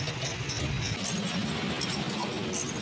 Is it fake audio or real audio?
real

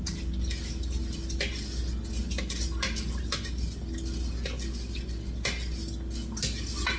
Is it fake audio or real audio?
real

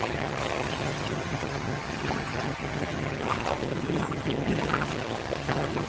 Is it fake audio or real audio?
fake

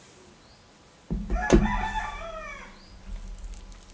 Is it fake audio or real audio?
real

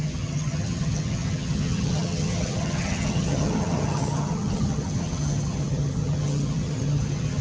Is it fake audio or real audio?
fake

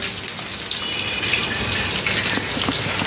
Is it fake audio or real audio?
real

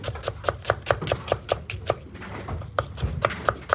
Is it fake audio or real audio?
real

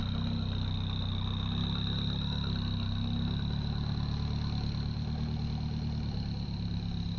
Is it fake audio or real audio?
real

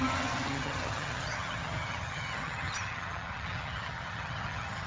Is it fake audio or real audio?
fake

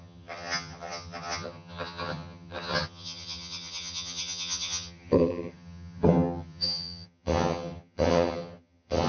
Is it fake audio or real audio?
fake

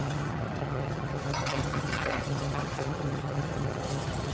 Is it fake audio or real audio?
fake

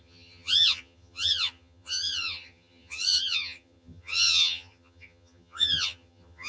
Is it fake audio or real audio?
fake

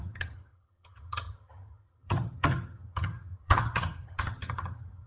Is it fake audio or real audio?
fake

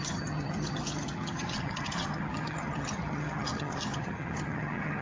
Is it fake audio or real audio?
fake